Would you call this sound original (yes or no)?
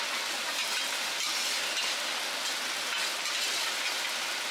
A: yes